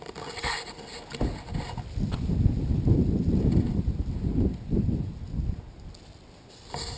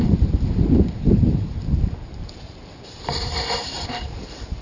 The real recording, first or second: first